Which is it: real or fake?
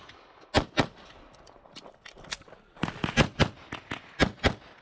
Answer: real